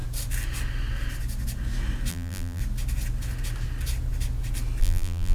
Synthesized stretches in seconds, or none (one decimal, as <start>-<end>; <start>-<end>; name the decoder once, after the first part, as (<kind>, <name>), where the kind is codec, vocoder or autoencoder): 2.1-2.6 (vocoder, BigVGAN v2); 4.8-5.3